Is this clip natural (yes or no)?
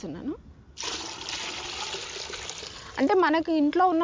yes